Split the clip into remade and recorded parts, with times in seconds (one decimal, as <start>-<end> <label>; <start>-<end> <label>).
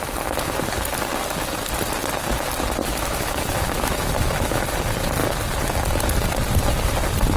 0.0-2.8 recorded; 2.8-4.6 remade; 4.6-7.4 recorded